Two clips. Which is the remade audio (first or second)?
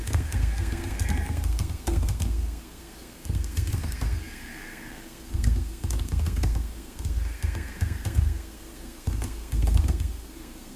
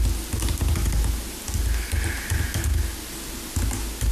first